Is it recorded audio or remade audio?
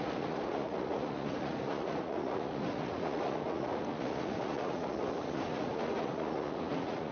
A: remade